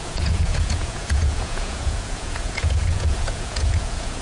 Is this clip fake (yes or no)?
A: yes